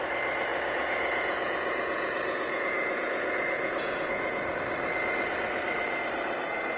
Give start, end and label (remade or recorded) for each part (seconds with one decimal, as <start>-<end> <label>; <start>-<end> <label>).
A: 0.0-0.5 recorded; 0.5-4.6 remade; 4.6-6.8 recorded